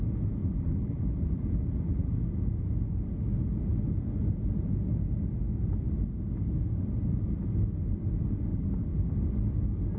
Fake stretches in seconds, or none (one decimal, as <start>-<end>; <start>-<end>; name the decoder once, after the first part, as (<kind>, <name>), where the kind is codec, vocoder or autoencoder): 0.4-2.1 (vocoder, BigVGAN v2); 8.5-9.1